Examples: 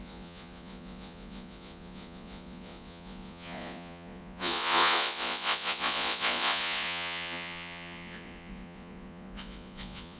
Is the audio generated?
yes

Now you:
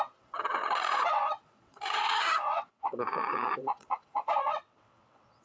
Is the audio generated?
yes